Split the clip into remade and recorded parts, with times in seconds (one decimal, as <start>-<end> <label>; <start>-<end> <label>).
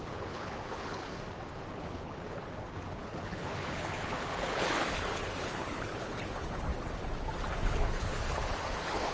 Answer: 0.0-1.1 remade; 1.1-1.7 recorded; 1.7-6.7 remade; 6.7-7.6 recorded; 7.6-9.1 remade